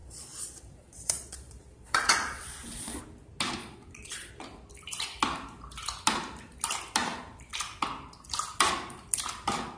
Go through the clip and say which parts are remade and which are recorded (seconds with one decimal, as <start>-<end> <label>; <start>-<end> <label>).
0.0-3.0 remade; 3.0-3.6 recorded; 3.6-4.3 remade; 4.3-9.8 recorded